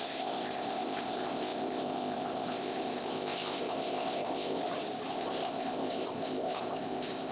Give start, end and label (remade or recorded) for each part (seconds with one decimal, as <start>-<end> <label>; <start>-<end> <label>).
0.0-4.6 remade; 4.6-5.1 recorded; 5.1-7.3 remade

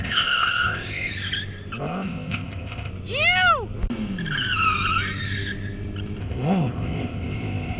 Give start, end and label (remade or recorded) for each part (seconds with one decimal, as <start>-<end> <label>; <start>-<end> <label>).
0.0-1.1 remade; 1.1-1.8 recorded; 1.8-2.9 remade; 2.9-6.2 recorded; 6.2-7.8 remade